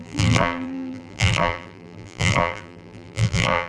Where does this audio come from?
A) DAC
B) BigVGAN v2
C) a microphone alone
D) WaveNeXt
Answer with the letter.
B